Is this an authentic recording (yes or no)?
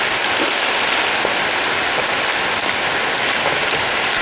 yes